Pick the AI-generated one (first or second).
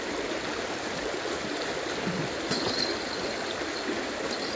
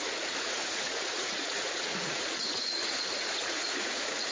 second